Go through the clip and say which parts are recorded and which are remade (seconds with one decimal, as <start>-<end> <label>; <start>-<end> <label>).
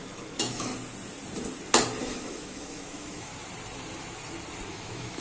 0.0-0.7 remade; 0.7-2.0 recorded; 2.0-3.3 remade; 3.3-4.7 recorded; 4.7-5.2 remade